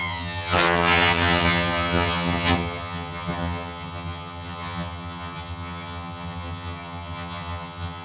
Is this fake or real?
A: fake